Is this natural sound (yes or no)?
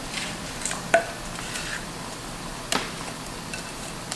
yes